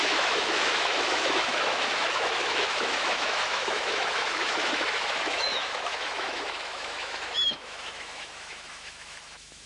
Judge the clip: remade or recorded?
remade